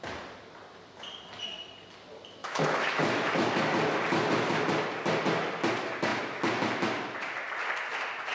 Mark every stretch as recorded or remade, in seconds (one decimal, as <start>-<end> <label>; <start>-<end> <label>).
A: 0.0-2.4 recorded; 2.4-3.0 remade; 3.0-8.3 recorded